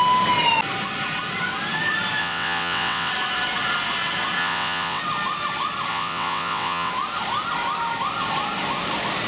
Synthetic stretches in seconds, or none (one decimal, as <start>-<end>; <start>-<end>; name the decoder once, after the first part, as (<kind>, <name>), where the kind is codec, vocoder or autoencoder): 2.2-3.1 (vocoder, WaveNeXt); 4.4-5.0; 5.9-6.9

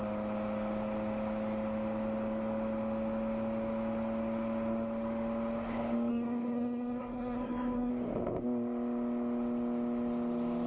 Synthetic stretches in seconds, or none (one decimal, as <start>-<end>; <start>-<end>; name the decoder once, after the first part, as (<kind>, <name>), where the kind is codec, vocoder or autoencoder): 6.1-7.9 (codec, SNAC)